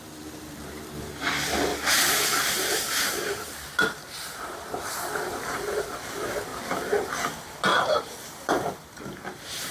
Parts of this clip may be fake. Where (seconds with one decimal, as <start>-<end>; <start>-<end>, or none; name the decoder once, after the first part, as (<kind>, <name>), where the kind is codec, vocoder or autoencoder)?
1.7-5.1 (vocoder, BigVGAN v2); 6.5-7.1; 7.7-8.9